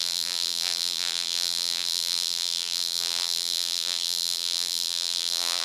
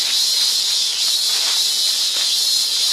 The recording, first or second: second